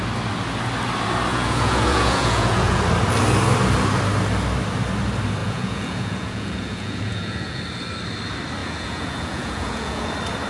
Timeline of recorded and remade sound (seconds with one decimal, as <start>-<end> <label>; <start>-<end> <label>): 0.0-1.3 recorded; 1.3-2.8 remade; 2.8-5.4 recorded; 5.4-7.6 remade; 7.6-8.6 recorded; 8.6-10.1 remade; 10.1-10.5 recorded